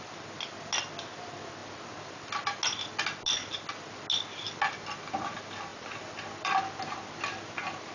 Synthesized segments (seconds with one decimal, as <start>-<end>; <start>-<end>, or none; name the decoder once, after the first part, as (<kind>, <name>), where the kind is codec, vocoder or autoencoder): 5.7-6.6 (vocoder, BigVGAN v2)